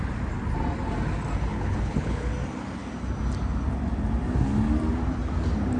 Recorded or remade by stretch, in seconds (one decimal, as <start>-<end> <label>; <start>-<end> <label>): 0.0-1.5 recorded; 1.5-2.3 remade; 2.3-5.8 recorded

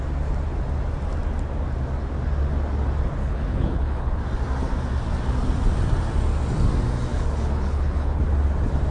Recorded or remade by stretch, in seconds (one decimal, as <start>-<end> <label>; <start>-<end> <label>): 0.0-3.2 recorded; 3.2-4.2 remade; 4.2-7.1 recorded; 7.1-8.2 remade; 8.2-8.9 recorded

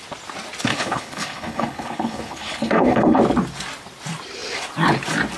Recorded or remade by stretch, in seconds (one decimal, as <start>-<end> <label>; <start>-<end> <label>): 0.0-0.7 recorded; 0.7-3.2 remade; 3.2-5.4 recorded

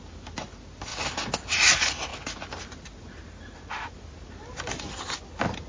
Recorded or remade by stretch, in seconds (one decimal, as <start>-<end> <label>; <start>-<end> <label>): 0.0-5.7 recorded

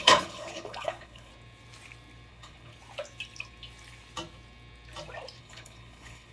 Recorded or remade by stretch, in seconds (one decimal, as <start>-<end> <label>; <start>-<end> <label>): 0.0-1.3 remade; 1.3-2.3 recorded; 2.3-2.7 remade; 2.7-5.4 recorded; 5.4-6.3 remade

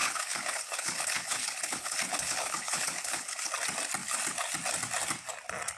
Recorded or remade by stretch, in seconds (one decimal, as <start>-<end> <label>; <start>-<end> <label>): 0.0-3.5 remade; 3.5-5.8 recorded

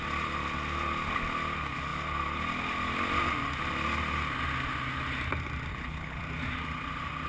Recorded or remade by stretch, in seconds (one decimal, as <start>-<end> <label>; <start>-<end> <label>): 0.0-5.7 recorded; 5.7-6.2 remade; 6.2-7.3 recorded

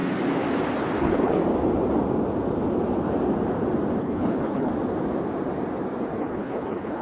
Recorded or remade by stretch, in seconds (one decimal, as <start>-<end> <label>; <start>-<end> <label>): 0.0-1.0 recorded; 1.0-1.4 remade; 1.4-4.0 recorded; 4.0-4.7 remade; 4.7-6.2 recorded; 6.2-7.0 remade